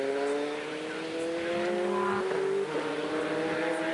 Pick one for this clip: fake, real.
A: real